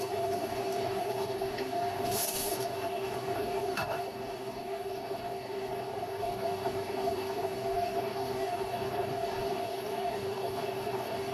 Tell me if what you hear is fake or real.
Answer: fake